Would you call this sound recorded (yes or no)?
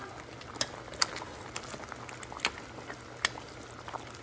yes